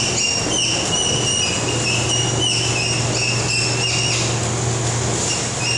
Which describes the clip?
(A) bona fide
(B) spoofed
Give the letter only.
A